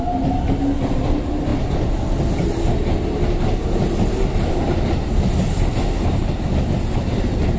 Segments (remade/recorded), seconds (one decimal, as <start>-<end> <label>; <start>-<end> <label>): 0.0-7.6 recorded